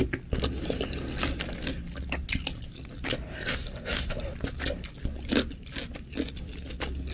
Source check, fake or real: real